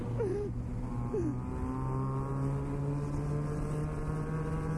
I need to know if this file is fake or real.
real